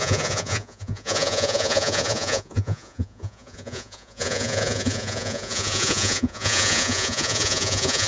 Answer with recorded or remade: remade